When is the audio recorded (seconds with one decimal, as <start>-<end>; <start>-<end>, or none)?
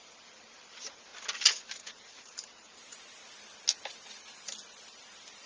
1.1-1.9; 3.2-3.9